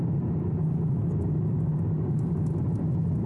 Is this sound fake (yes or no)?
no